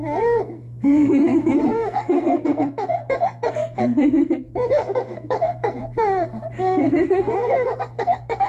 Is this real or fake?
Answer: fake